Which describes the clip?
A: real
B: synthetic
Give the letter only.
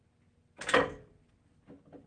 A